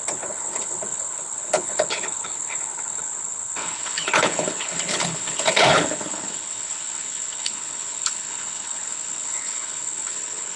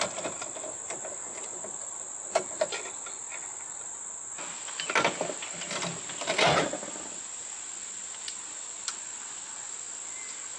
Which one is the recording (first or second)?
second